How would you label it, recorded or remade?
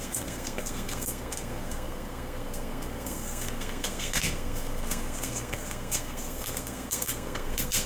remade